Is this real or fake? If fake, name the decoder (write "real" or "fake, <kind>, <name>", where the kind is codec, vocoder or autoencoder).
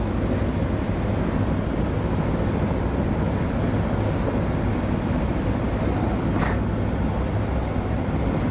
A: real